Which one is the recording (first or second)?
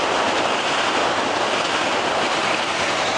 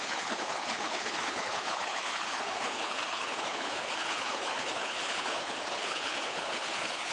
first